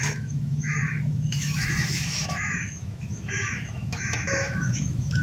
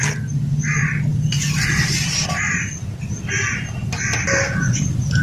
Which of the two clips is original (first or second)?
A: second